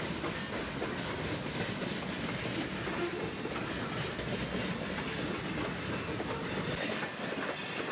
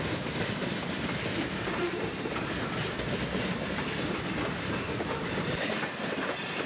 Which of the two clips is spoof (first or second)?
second